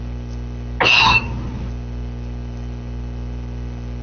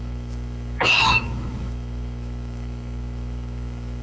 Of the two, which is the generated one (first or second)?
second